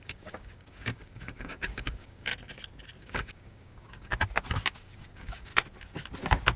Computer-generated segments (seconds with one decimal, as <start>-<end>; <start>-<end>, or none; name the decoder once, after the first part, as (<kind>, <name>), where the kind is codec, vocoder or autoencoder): 0.0-2.3 (codec, DAC); 3.0-4.1; 4.7-5.5